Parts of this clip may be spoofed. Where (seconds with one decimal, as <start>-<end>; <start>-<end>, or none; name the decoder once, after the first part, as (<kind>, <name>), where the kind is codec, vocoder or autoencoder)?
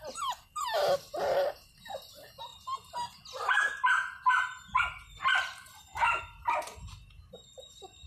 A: none